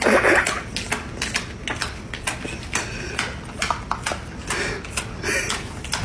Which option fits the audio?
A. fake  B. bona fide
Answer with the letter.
B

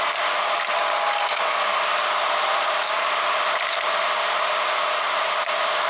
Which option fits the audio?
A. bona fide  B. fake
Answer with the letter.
A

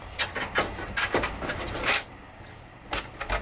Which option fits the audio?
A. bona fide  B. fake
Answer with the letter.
A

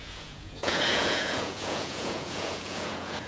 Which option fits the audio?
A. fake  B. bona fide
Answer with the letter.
A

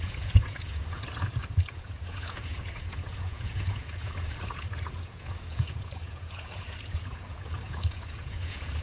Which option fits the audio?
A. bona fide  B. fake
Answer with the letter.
B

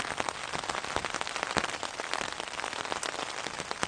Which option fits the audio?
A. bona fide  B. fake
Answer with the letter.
A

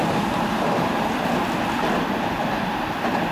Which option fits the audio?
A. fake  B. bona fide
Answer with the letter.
B